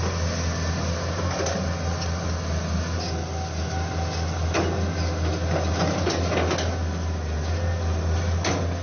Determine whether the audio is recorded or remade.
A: recorded